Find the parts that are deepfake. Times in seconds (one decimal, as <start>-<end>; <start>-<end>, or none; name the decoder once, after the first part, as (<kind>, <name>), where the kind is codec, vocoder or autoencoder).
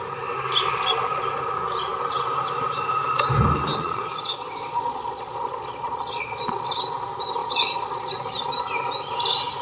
3.8-6.7 (vocoder, Vocos); 7.4-8.1